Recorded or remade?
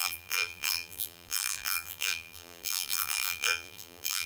remade